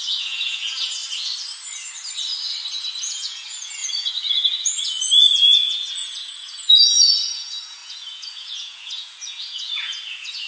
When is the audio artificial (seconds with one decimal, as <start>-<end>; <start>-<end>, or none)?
0.0-1.0; 3.0-10.5